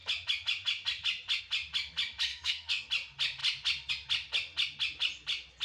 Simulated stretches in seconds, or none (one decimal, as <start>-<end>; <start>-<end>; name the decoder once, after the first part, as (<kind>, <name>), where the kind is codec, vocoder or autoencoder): 2.3-2.9 (codec, SNAC)